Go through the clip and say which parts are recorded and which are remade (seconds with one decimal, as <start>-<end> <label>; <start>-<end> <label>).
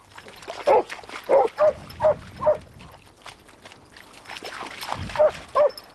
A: 0.0-5.9 recorded